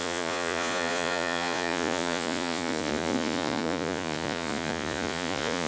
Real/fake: fake